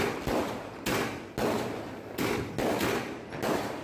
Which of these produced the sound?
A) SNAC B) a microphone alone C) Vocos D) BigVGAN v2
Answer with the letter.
B